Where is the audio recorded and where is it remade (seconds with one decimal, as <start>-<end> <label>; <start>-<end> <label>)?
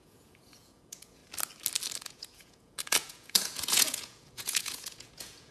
0.0-1.2 remade; 1.2-2.0 recorded; 2.0-5.5 remade